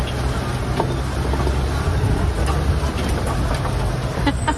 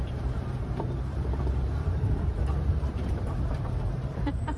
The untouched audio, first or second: first